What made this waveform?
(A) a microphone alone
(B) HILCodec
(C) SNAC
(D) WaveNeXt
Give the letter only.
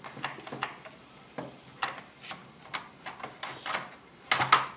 A